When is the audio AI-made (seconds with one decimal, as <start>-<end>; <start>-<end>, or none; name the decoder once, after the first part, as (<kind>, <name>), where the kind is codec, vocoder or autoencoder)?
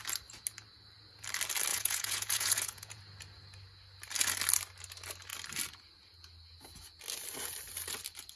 1.7-3.0 (vocoder, Vocos)